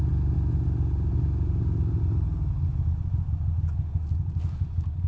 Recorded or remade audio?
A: recorded